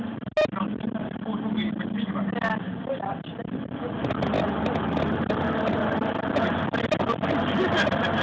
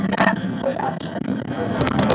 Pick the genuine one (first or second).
first